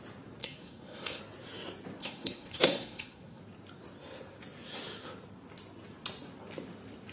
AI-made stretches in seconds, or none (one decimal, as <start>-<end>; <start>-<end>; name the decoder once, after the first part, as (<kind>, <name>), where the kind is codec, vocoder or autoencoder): 0.4-1.2 (codec, SNAC); 2.0-3.4